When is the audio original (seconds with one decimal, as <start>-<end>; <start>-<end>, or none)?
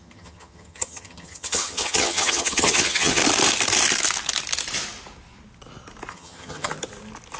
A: 3.2-6.1; 6.7-7.4